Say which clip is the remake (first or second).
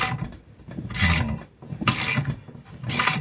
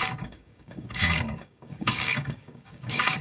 second